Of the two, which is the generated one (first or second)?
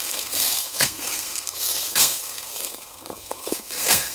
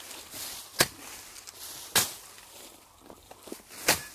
first